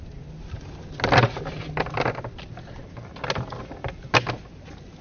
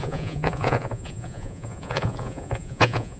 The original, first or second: first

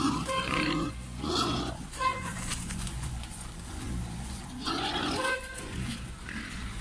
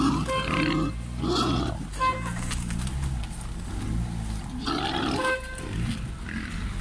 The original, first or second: second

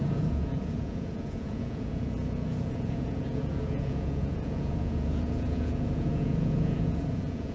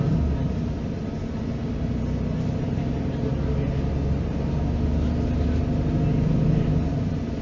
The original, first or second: second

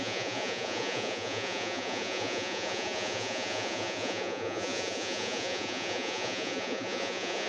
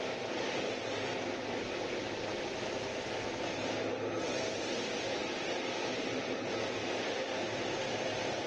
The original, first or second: second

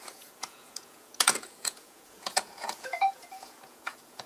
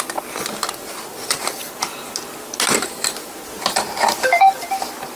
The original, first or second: second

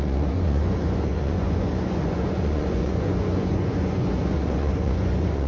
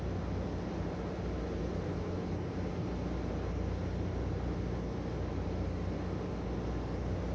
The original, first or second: second